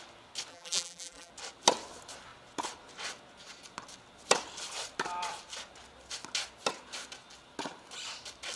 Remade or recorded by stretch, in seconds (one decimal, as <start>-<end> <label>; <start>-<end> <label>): 0.0-0.5 recorded; 0.5-1.3 remade; 1.3-8.6 recorded